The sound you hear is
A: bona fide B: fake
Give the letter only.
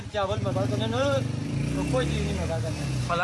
A